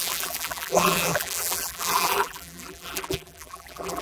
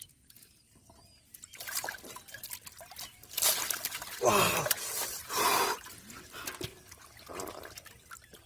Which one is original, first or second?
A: second